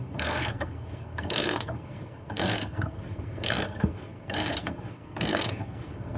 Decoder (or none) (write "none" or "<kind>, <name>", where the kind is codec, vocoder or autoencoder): codec, SNAC